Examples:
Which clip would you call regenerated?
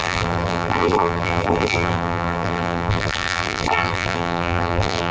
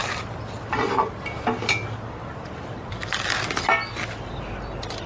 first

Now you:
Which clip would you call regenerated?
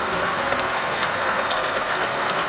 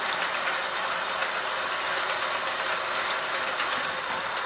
first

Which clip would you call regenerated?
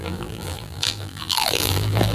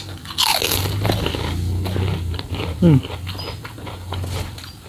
first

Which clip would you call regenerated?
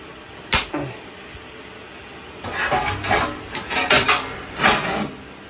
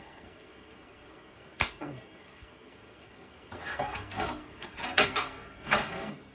second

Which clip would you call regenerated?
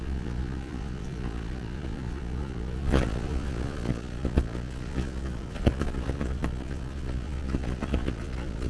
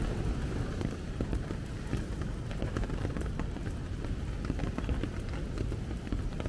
first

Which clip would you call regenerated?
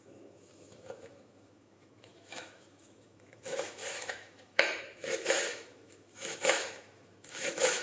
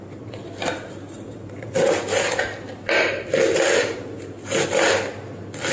first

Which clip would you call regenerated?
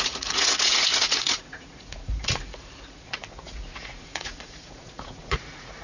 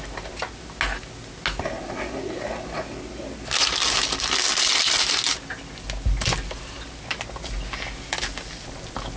first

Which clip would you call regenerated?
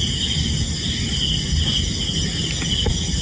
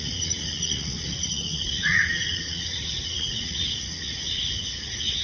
second